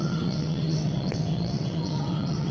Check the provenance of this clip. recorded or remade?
remade